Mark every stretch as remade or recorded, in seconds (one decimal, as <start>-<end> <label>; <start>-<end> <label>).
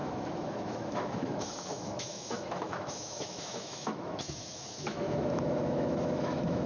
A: 0.0-6.7 remade